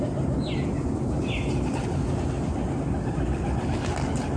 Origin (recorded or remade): recorded